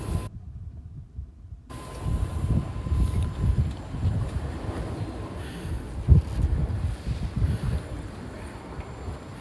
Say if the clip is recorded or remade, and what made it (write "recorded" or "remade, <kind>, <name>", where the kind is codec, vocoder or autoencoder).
recorded